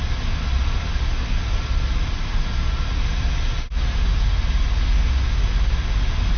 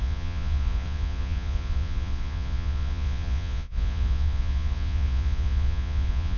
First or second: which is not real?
second